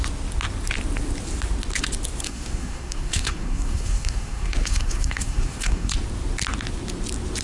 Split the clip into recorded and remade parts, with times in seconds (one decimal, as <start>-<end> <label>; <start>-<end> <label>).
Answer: 0.0-2.2 recorded; 2.2-5.9 remade; 5.9-7.4 recorded